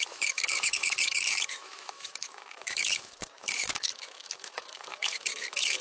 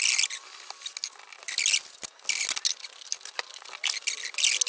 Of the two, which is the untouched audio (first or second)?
second